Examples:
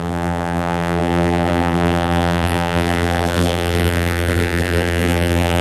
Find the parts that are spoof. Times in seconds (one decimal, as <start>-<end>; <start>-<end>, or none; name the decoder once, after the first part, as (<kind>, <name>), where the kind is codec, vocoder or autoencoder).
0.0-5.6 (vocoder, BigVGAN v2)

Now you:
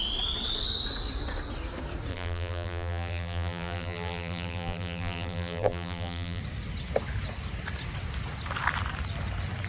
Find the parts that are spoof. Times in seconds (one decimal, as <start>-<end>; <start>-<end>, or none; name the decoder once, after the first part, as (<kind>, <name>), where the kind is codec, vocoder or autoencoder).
2.1-6.4 (vocoder, BigVGAN v2)

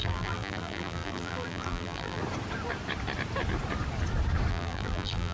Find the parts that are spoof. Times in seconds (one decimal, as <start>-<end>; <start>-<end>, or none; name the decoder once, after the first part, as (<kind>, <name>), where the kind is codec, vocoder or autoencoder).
0.0-2.2 (vocoder, BigVGAN v2); 4.5-5.3

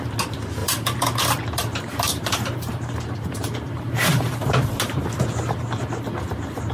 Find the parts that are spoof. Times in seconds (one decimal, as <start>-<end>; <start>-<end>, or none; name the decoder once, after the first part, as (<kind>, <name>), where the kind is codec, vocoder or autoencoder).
0.6-4.6 (vocoder, BigVGAN v2)

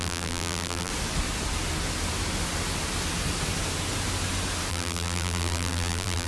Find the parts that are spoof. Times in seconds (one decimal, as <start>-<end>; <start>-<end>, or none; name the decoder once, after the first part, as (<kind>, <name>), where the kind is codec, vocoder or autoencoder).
0.0-0.9 (vocoder, BigVGAN v2); 4.7-6.3

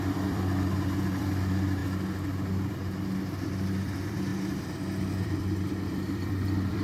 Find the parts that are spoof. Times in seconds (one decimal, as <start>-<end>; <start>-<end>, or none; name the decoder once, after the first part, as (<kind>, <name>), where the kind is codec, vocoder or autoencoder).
0.0-1.8 (vocoder, BigVGAN v2); 2.7-4.3; 5.2-6.8

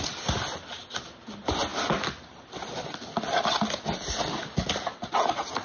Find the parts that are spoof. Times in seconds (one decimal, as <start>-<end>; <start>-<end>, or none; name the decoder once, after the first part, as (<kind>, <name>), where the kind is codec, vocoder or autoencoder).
none